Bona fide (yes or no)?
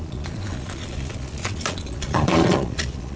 no